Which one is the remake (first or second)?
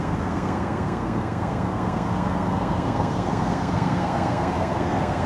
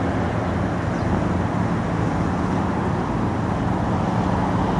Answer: first